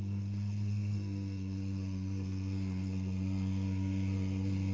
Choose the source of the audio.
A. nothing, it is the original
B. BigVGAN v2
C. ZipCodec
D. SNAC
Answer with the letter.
D